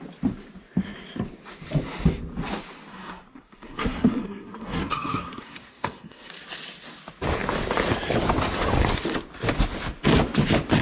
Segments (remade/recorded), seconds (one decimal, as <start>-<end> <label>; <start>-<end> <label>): 0.0-2.9 recorded; 2.9-6.3 remade; 6.3-10.8 recorded